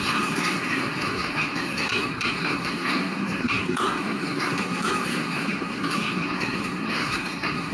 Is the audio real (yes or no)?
no